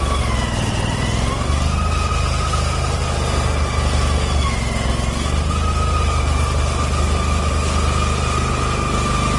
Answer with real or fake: real